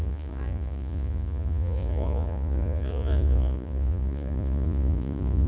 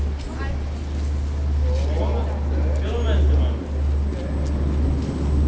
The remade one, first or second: first